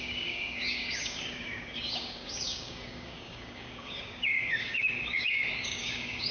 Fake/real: fake